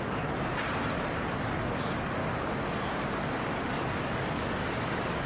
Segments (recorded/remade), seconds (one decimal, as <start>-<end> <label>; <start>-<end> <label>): 0.0-0.5 remade; 0.5-1.4 recorded; 1.4-2.2 remade; 2.2-3.1 recorded; 3.1-5.3 remade